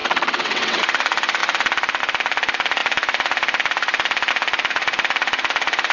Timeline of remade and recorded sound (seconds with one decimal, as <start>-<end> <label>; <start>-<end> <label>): 0.0-0.8 remade; 0.8-5.9 recorded